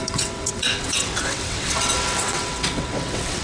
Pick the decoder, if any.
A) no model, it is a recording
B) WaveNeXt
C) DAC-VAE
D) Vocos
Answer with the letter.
B